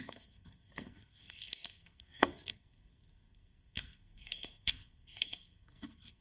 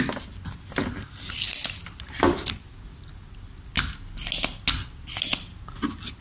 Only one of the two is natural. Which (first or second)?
second